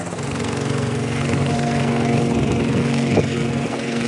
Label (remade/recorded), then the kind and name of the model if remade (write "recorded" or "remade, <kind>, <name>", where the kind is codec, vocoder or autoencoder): remade, codec, SNAC